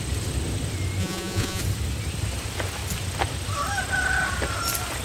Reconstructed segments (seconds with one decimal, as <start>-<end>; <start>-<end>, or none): 1.0-1.6